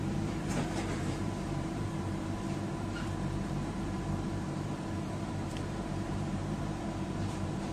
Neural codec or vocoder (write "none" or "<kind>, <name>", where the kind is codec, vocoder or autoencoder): vocoder, BigVGAN v2